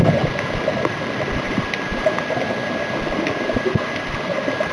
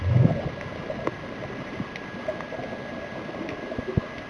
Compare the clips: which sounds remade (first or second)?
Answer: first